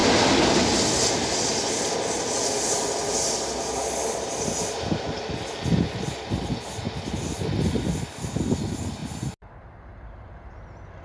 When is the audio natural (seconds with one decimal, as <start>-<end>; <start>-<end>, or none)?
0.0-11.0